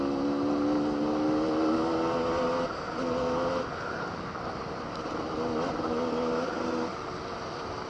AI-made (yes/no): no